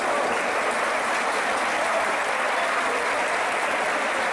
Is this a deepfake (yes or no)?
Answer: no